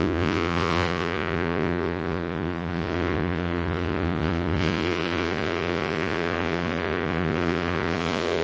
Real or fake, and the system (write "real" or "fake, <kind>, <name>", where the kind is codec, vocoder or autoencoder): fake, vocoder, Vocos